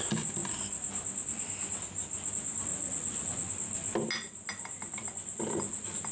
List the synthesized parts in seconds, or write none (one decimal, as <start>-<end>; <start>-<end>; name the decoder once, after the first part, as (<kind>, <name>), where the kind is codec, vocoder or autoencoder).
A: 2.7-3.5 (vocoder, Vocos)